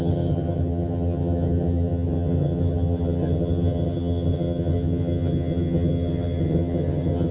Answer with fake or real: fake